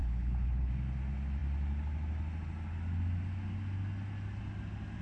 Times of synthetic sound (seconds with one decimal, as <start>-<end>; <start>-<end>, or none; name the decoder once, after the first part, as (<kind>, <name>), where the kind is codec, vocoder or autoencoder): 0.0-0.7 (codec, HILCodec)